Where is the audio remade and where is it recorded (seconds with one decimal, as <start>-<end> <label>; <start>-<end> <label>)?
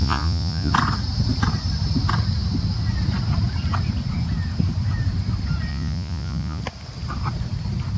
0.0-0.7 remade; 0.7-5.7 recorded; 5.7-6.6 remade; 6.6-8.0 recorded